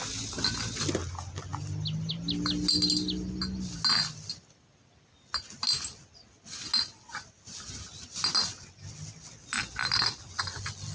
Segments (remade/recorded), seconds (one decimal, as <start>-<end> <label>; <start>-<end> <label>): 0.0-10.9 recorded